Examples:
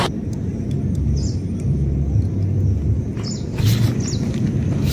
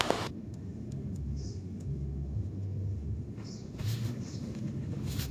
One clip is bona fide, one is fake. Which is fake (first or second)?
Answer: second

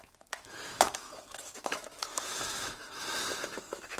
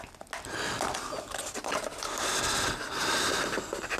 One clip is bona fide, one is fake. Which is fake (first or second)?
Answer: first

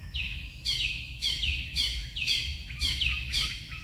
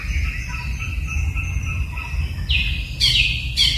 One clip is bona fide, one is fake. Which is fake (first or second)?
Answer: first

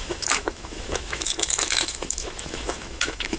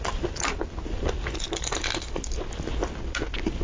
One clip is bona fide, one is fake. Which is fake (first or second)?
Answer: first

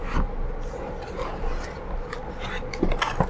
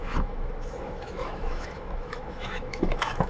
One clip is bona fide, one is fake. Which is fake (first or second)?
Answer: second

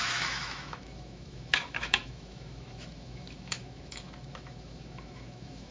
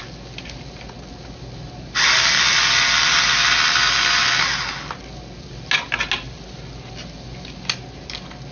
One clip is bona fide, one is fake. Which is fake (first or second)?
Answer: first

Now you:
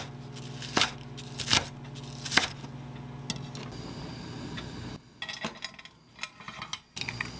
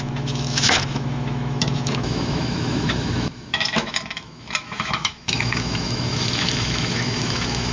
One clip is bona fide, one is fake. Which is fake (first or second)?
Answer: second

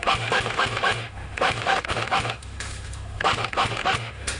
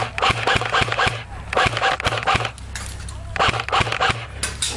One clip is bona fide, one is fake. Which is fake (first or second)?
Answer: first